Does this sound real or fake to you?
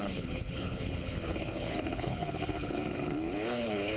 fake